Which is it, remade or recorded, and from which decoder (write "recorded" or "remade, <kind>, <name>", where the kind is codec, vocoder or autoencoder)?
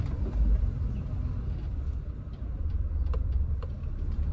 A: remade, vocoder, BigVGAN v2